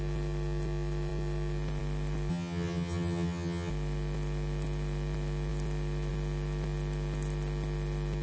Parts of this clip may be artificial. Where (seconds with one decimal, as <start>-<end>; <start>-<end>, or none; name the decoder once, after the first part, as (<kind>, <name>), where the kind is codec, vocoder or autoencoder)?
2.3-3.7 (vocoder, HiFi-GAN)